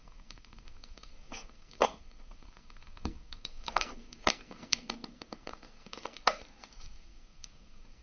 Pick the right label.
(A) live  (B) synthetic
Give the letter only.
B